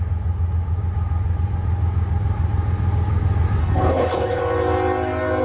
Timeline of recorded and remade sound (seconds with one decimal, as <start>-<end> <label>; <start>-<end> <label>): 0.0-3.6 recorded; 3.6-4.4 remade; 4.4-5.4 recorded